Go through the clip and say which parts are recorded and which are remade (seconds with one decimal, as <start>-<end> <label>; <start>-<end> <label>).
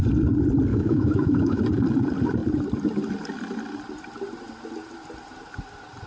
0.0-0.7 recorded; 0.7-1.6 remade; 1.6-6.1 recorded